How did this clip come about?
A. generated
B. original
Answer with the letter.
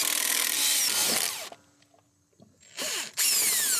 B